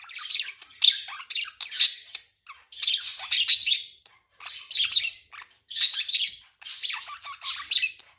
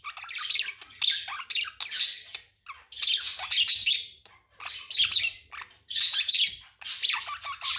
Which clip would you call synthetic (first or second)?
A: first